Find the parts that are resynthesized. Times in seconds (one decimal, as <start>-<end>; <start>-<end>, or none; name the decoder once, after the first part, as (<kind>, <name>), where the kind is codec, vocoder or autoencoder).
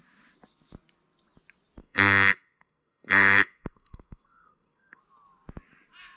1.8-5.0 (codec, SNAC)